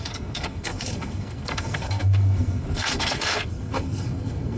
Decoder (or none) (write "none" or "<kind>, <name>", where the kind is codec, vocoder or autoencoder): codec, SNAC